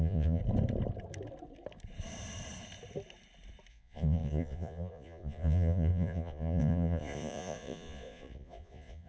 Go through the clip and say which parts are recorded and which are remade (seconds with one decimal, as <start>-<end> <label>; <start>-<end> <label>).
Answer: 0.0-0.4 remade; 0.4-3.7 recorded; 3.7-9.1 remade